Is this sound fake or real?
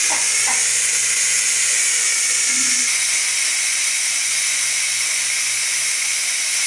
fake